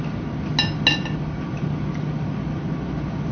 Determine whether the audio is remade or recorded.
recorded